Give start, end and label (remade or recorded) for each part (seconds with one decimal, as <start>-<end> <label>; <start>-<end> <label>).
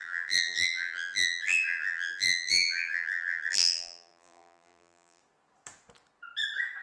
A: 0.0-5.2 remade; 5.2-6.8 recorded